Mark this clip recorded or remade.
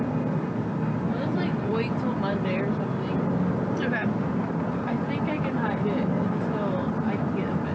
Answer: recorded